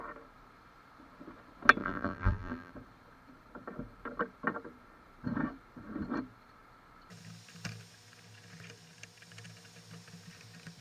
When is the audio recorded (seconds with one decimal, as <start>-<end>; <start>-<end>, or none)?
0.0-1.8; 2.7-10.8